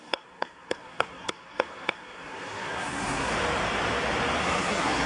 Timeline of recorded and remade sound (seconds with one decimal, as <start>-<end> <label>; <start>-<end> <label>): 0.0-3.3 remade; 3.3-4.4 recorded; 4.4-5.1 remade